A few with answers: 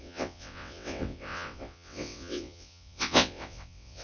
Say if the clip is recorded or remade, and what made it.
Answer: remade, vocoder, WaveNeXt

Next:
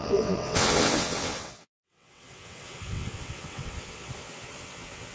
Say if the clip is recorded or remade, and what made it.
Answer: remade, vocoder, WaveNeXt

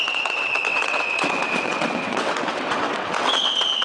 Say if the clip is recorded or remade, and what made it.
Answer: remade, vocoder, WaveNeXt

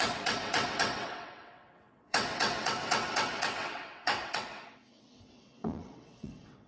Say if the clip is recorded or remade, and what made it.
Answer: remade, vocoder, WaveNeXt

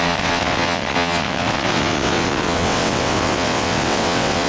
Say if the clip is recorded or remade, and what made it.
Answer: remade, vocoder, WaveNeXt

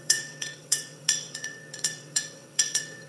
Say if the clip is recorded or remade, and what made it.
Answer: remade, vocoder, WaveNeXt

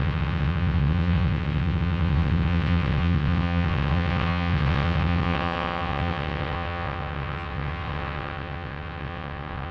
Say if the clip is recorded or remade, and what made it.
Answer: remade, vocoder, WaveNeXt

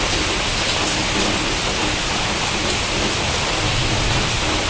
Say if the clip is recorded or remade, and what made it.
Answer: recorded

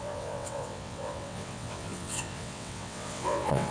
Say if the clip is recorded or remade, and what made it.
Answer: remade, vocoder, WaveNeXt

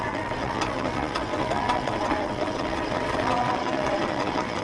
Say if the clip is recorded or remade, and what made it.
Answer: remade, vocoder, WaveNeXt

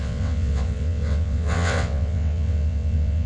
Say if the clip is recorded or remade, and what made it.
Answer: remade, vocoder, WaveNeXt